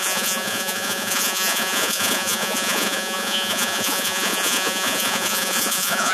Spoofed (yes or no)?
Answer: yes